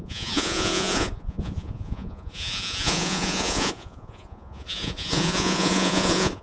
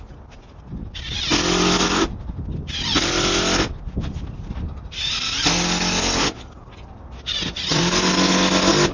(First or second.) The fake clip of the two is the first